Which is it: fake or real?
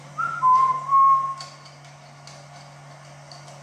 real